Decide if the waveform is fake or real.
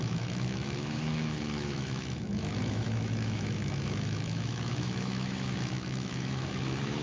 fake